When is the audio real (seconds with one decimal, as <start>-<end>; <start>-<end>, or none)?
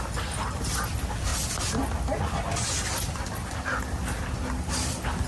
0.0-5.3